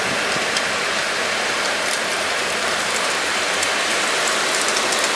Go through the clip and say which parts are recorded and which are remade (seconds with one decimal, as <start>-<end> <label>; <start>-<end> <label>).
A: 0.0-5.2 recorded